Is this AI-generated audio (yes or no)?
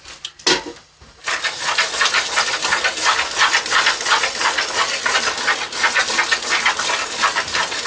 no